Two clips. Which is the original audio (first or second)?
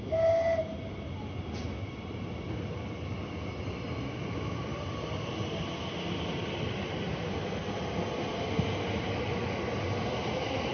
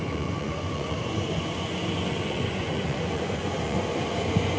first